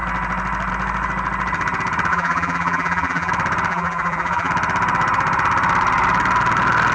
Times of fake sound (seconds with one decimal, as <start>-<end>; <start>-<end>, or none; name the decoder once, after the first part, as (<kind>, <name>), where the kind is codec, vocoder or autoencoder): 2.1-3.3 (vocoder, BigVGAN v2); 3.7-4.5